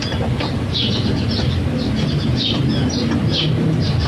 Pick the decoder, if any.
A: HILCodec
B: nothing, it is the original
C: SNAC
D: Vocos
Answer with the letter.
B